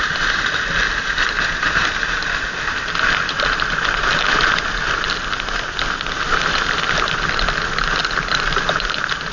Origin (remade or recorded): recorded